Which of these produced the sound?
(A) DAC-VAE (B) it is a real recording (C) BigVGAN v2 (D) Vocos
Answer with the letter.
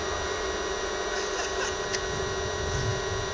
B